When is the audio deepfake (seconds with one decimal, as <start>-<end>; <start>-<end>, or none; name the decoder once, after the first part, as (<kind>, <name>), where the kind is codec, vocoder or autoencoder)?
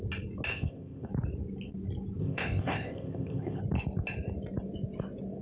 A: 0.5-1.1 (codec, ZipCodec); 2.2-3.6